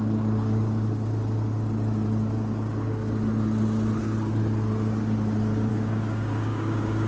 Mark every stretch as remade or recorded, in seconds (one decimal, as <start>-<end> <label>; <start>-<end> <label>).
0.0-5.7 recorded; 5.7-7.1 remade